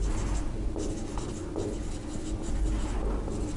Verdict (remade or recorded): recorded